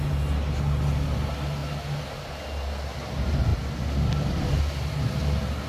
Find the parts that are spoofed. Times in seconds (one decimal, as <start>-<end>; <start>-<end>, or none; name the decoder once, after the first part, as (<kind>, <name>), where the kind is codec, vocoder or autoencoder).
none